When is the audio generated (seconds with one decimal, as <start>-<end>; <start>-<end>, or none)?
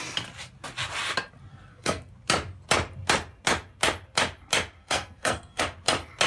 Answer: 1.5-2.1; 4.8-5.6